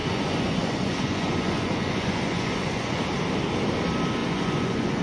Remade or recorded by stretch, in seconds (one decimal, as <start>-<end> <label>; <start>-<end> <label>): 0.0-3.0 remade; 3.0-4.2 recorded; 4.2-5.0 remade